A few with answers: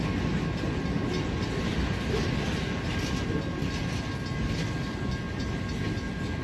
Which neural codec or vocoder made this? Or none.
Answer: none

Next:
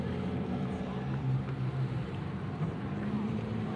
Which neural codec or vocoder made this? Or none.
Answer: vocoder, BigVGAN v2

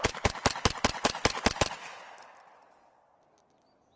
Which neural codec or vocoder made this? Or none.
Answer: none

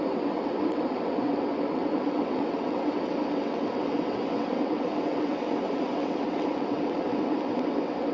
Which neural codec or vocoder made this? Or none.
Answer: vocoder, WaveNeXt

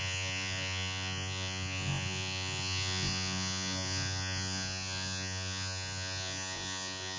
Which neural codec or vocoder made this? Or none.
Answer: vocoder, Vocos